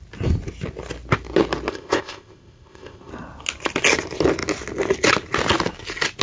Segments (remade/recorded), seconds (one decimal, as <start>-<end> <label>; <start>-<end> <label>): 0.0-1.7 recorded; 1.7-3.1 remade; 3.1-6.2 recorded